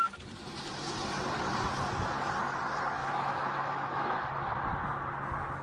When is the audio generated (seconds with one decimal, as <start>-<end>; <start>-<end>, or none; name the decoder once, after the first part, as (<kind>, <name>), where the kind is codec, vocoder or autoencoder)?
3.0-4.3 (autoencoder, DAC-VAE)